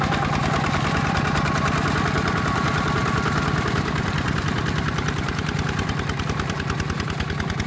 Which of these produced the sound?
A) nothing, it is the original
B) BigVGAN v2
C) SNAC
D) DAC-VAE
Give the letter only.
B